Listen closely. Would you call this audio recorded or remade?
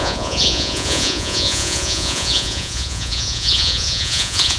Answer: remade